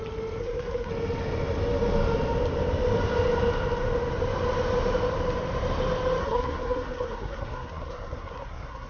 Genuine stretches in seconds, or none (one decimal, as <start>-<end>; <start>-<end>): 0.0-0.4; 0.9-6.2